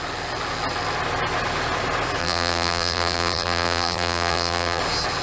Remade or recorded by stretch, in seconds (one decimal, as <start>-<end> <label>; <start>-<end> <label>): 0.0-2.2 recorded; 2.2-4.8 remade; 4.8-5.2 recorded